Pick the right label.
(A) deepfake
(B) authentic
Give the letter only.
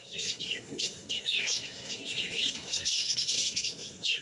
A